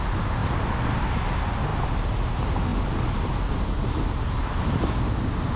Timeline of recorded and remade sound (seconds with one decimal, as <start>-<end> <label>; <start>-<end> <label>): 0.0-0.4 recorded; 0.4-0.9 remade; 0.9-2.7 recorded; 2.7-5.0 remade; 5.0-5.6 recorded